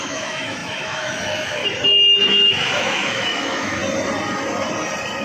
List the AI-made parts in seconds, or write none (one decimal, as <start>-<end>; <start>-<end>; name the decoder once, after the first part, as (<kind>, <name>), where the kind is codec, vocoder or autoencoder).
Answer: 0.0-1.6 (autoencoder, DAC-VAE); 2.3-3.8